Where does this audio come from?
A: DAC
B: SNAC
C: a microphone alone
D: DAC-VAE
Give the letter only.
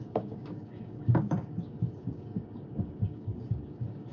A